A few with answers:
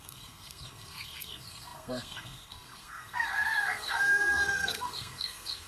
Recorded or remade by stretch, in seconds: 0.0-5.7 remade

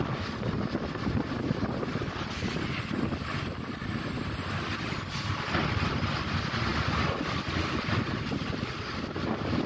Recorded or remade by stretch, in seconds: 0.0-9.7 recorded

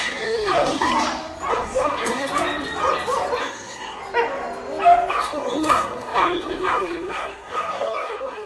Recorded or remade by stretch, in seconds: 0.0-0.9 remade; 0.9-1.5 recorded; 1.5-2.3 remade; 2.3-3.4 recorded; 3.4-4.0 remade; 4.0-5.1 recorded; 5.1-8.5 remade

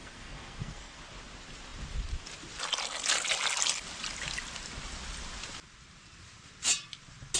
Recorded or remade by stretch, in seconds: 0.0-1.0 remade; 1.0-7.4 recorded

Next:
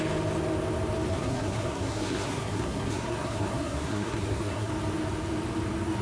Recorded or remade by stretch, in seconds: 0.0-1.1 recorded; 1.1-4.7 remade; 4.7-6.0 recorded

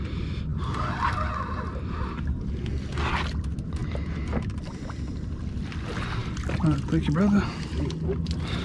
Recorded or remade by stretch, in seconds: 0.0-8.6 recorded